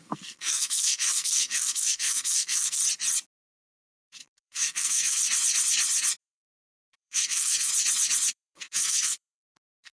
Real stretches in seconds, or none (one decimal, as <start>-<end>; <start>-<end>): 2.8-3.6; 5.2-6.2; 7.7-8.3